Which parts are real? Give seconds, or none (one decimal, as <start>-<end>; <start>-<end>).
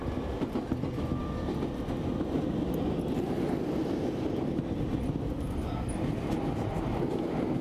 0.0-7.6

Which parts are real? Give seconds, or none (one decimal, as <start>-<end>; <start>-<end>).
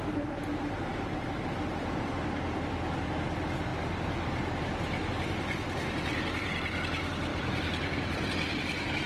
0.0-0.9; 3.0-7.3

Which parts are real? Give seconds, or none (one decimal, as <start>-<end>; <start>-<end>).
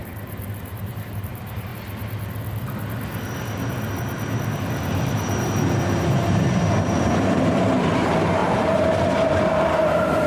0.0-0.8; 1.7-4.8